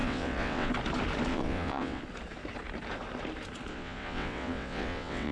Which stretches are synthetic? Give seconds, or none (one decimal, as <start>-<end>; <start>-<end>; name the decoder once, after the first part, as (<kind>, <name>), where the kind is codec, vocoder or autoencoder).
0.0-0.7 (vocoder, WaveNeXt); 1.3-2.0; 3.7-5.3